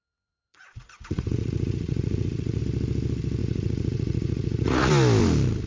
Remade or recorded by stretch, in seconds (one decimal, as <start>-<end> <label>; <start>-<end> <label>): 0.0-0.5 recorded; 0.5-2.6 remade; 2.6-3.4 recorded; 3.4-4.9 remade; 4.9-5.7 recorded